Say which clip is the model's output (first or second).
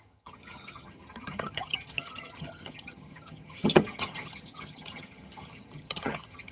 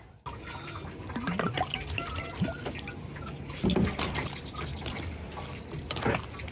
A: first